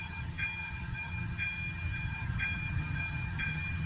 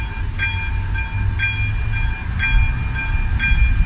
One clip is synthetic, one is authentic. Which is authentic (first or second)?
second